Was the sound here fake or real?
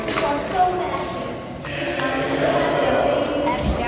real